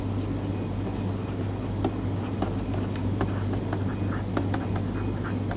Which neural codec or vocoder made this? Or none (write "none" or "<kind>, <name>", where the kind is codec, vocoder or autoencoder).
none